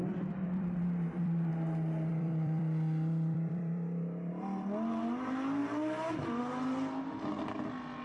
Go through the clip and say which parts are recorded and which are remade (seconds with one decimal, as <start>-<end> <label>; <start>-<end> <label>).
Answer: 0.0-1.5 remade; 1.5-2.1 recorded; 2.1-4.3 remade; 4.3-8.0 recorded